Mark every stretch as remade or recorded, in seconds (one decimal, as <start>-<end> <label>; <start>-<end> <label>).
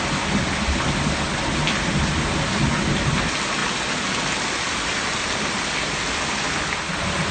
0.0-7.3 recorded